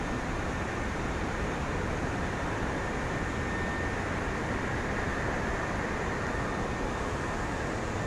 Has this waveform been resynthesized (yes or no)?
no